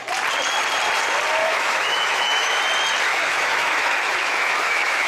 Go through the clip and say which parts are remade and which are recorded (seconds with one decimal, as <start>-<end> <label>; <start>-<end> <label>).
0.0-1.4 recorded; 1.4-2.6 remade; 2.6-3.1 recorded; 3.1-5.1 remade